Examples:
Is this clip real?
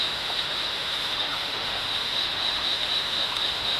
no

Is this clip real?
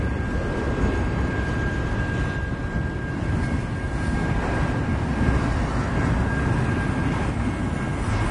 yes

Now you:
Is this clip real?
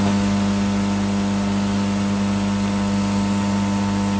yes